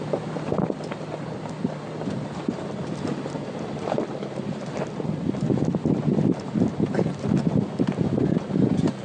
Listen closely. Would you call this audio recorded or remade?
recorded